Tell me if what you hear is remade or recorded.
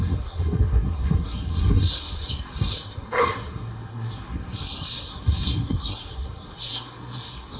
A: remade